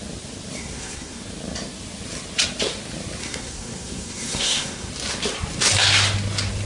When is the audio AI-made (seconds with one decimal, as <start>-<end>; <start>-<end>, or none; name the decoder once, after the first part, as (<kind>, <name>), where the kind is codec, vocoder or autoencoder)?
0.6-1.2 (codec, SNAC); 3.2-4.9